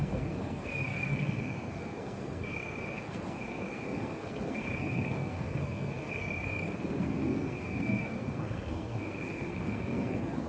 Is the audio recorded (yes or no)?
no